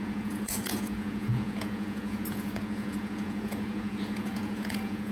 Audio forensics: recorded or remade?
remade